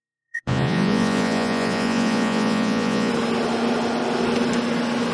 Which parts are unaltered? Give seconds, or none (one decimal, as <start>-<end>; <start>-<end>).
3.1-5.1